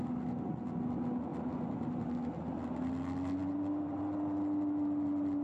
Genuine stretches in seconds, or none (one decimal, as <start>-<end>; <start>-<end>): 0.0-3.4; 4.0-5.4